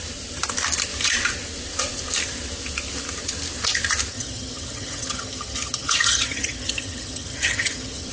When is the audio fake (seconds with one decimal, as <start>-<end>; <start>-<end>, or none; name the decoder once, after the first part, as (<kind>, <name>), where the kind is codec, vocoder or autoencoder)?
4.1-8.1 (vocoder, HiFi-GAN)